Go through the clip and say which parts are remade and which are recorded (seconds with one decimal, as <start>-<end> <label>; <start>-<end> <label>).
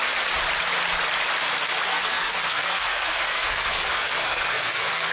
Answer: 0.0-1.9 recorded; 1.9-5.1 remade